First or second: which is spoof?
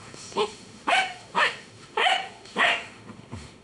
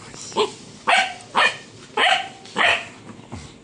first